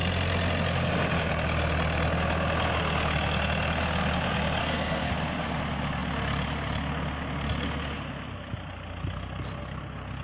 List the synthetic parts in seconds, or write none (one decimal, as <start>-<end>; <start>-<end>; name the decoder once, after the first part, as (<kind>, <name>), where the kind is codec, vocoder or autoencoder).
4.6-5.1 (codec, SNAC)